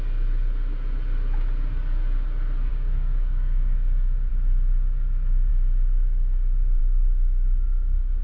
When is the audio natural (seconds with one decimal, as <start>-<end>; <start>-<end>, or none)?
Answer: 0.0-2.7; 4.3-8.2